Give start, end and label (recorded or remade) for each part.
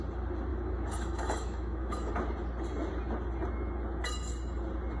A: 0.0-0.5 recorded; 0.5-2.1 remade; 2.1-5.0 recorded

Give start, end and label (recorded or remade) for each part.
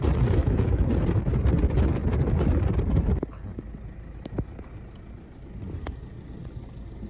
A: 0.0-0.4 recorded; 0.4-0.9 remade; 0.9-7.1 recorded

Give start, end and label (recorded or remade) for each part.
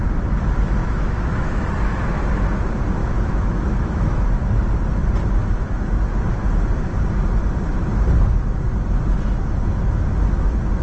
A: 0.0-0.8 recorded; 0.8-1.6 remade; 1.6-3.0 recorded; 3.0-4.3 remade; 4.3-10.8 recorded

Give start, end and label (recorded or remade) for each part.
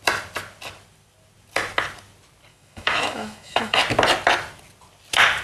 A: 0.0-2.5 recorded; 2.5-3.8 remade; 3.8-5.4 recorded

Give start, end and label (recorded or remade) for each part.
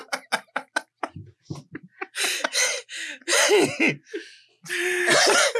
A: 0.0-5.6 recorded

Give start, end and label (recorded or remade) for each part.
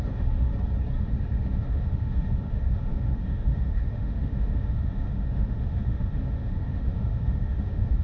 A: 0.0-0.5 remade; 0.5-1.0 recorded; 1.0-8.0 remade